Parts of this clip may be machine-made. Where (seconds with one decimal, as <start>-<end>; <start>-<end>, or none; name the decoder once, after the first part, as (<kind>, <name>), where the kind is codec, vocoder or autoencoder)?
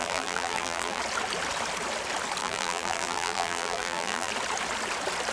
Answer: 0.0-1.0 (vocoder, BigVGAN v2); 2.4-4.3